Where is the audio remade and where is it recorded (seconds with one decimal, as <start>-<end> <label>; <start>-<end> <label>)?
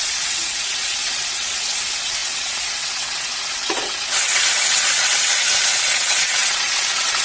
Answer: 0.0-7.2 remade